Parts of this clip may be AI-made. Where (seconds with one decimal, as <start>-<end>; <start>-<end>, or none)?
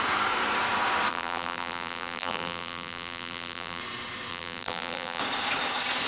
1.1-3.8; 4.3-5.2